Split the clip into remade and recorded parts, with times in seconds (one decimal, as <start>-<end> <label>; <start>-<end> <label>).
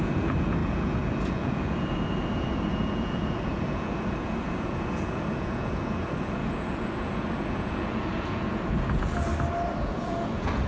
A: 0.0-9.3 remade; 9.3-9.8 recorded; 9.8-10.7 remade